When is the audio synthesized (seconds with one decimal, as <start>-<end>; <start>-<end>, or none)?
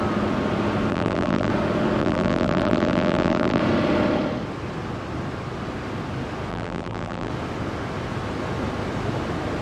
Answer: 0.9-1.5; 2.0-3.6; 6.5-7.3